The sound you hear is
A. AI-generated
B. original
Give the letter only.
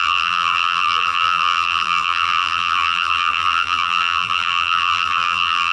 A